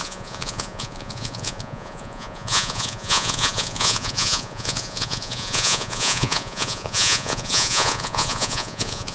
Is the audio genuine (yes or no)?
no